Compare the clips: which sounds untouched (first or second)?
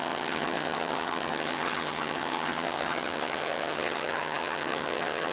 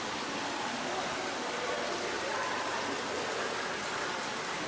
second